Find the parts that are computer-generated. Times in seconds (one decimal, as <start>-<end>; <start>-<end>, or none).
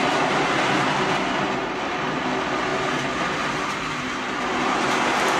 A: none